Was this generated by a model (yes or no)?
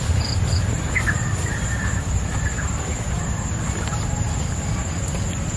no